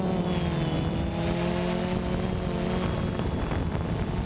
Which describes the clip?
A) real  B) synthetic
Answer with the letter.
A